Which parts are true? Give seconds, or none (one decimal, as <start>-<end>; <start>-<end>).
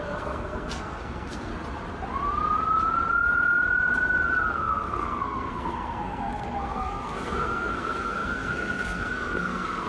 1.5-4.5